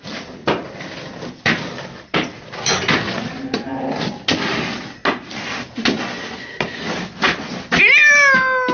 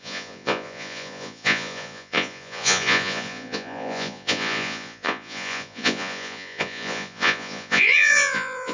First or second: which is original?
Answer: first